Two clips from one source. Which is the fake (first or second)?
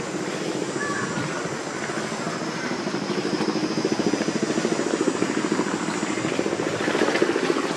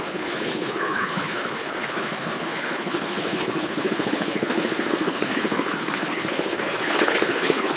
second